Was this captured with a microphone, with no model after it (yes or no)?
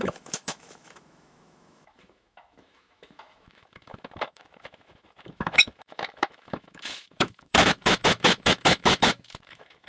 no